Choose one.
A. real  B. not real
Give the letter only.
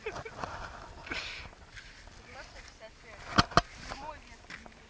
A